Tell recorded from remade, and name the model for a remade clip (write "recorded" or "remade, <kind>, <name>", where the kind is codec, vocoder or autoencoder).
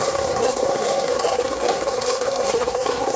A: remade, codec, SNAC